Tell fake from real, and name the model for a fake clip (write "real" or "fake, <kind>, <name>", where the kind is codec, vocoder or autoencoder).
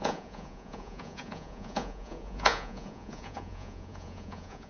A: fake, vocoder, Vocos